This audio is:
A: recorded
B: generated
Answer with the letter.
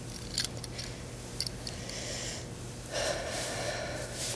A